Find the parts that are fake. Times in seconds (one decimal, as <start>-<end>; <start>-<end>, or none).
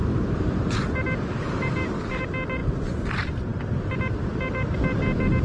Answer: 0.0-2.2